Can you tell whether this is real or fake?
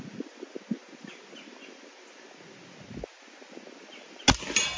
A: real